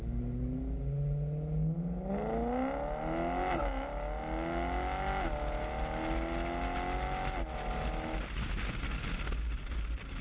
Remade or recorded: recorded